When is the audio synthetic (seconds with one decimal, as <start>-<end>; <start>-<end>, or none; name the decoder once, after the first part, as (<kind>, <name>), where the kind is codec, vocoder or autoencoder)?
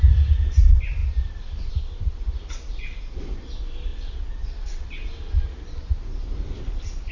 none